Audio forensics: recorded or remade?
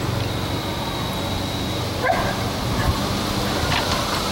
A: recorded